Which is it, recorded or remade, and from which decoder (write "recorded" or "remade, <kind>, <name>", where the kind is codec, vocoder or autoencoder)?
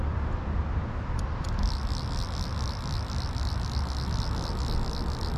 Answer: recorded